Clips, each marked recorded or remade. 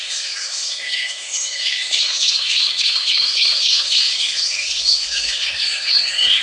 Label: remade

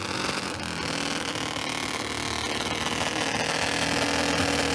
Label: recorded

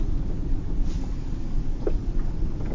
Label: recorded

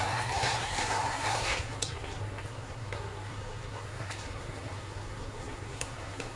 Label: remade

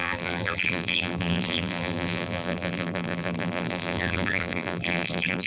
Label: remade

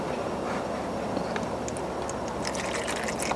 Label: recorded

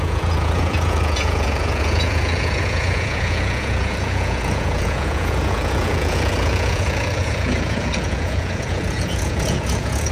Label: remade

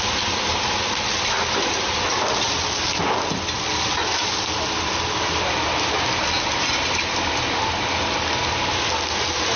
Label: recorded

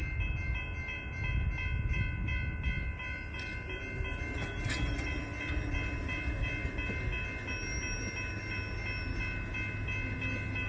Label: recorded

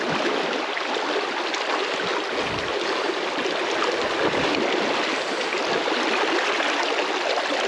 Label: recorded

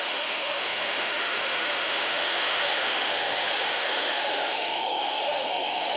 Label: remade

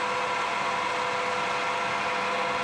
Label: recorded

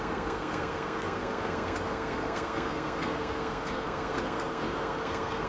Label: remade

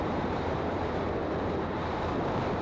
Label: remade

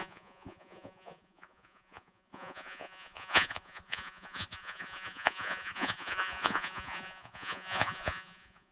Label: remade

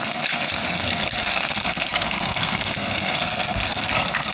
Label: remade